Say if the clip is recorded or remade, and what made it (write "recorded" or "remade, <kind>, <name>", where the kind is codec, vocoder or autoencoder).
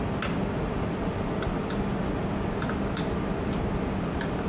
recorded